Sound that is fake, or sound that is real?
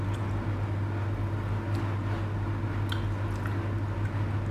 real